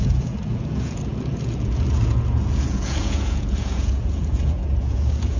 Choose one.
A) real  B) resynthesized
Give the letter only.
B